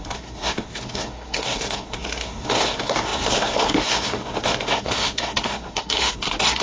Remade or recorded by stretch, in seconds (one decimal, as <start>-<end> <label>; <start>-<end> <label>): 0.0-6.6 remade